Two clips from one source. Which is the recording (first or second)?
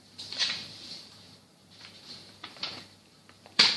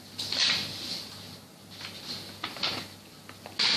second